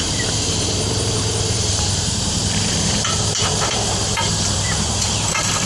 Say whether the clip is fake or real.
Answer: fake